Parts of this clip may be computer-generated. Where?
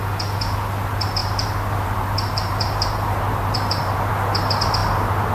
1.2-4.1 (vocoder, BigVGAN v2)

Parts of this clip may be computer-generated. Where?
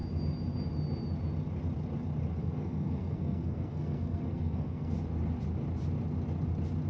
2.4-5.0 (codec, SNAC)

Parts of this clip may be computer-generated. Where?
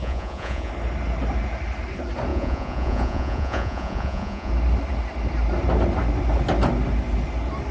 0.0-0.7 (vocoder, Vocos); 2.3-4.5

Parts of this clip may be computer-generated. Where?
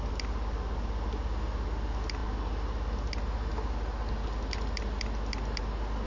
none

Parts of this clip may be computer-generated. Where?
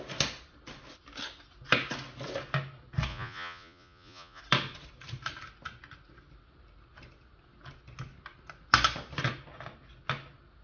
3.1-4.4 (vocoder, Vocos)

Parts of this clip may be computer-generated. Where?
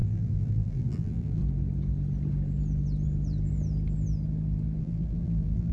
0.0-1.4 (vocoder, BigVGAN v2); 4.8-5.7